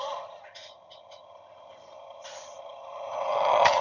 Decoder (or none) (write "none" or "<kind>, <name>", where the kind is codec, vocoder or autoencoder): vocoder, HiFi-GAN